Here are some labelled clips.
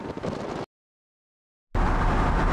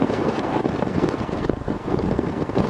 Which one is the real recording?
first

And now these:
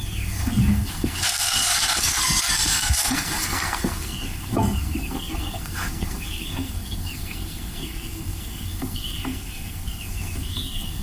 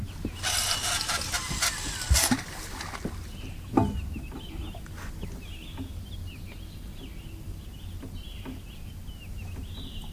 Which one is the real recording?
second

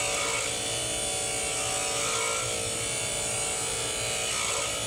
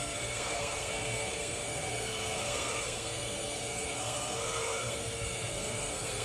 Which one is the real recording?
first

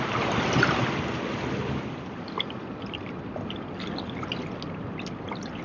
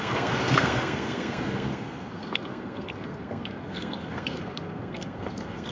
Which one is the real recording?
first